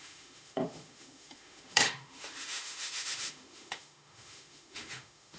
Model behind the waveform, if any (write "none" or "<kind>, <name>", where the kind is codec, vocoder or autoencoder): autoencoder, DAC-VAE